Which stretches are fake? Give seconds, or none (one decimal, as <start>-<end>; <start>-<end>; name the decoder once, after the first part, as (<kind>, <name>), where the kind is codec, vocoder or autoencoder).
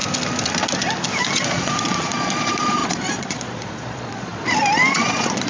1.3-4.3 (vocoder, Vocos); 4.9-5.5